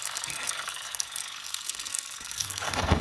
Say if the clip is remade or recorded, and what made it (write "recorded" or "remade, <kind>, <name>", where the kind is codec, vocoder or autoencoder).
remade, codec, SNAC